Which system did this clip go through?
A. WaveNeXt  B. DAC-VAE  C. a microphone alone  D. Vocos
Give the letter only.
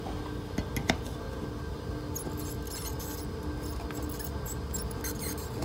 C